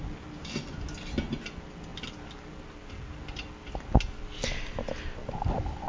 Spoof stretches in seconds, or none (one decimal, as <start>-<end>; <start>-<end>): none